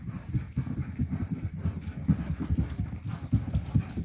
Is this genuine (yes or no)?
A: yes